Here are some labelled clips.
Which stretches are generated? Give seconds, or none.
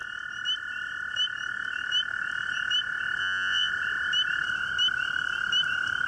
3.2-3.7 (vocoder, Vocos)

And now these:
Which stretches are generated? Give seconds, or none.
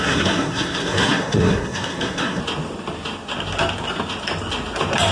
0.0-2.4 (codec, SNAC)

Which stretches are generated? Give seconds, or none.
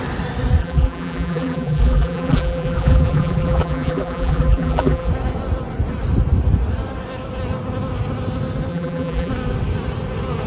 0.6-5.1 (vocoder, BigVGAN v2); 8.7-9.3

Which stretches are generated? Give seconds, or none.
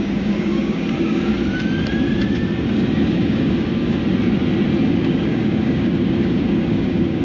0.0-1.3 (codec, DAC); 2.9-4.0; 4.9-7.2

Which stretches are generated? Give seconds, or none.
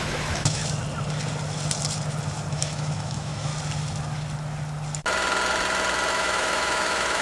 0.0-0.6 (autoencoder, DAC-VAE); 2.5-3.5; 6.1-7.2